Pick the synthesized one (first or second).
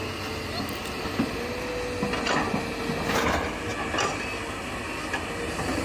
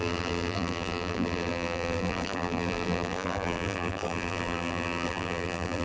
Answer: second